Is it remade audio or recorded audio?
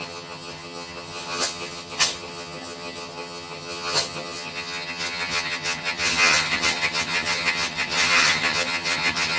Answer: remade